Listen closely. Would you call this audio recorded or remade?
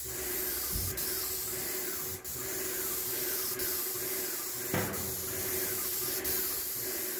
remade